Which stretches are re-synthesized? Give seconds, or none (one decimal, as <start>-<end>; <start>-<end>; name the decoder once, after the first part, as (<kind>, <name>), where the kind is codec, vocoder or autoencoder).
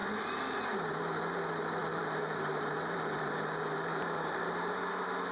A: 1.8-4.7 (vocoder, BigVGAN v2)